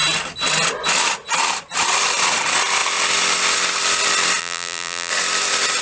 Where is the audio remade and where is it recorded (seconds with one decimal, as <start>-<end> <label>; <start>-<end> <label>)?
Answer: 0.0-4.4 recorded; 4.4-5.1 remade; 5.1-5.8 recorded